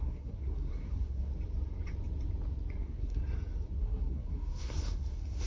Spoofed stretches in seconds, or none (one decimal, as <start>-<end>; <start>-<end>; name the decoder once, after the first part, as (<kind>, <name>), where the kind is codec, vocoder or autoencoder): 0.0-1.3 (codec, SNAC); 2.8-3.2; 3.8-5.5